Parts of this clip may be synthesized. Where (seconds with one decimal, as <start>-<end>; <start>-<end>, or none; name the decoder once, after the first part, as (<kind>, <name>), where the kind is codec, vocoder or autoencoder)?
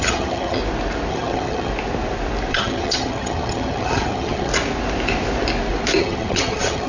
0.0-0.6 (vocoder, HiFi-GAN); 1.1-1.7; 2.5-4.5; 6.0-6.9